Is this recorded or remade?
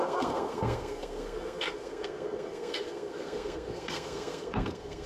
remade